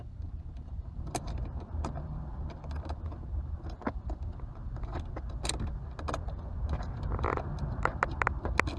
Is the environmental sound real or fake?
real